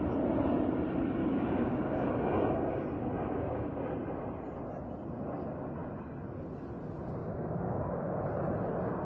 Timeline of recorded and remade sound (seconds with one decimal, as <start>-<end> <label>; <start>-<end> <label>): 0.0-1.2 recorded; 1.2-2.1 remade; 2.1-3.2 recorded; 3.2-3.8 remade; 3.8-7.2 recorded; 7.2-8.1 remade; 8.1-9.0 recorded